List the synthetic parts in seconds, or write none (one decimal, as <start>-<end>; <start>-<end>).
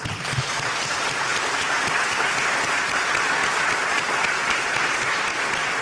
none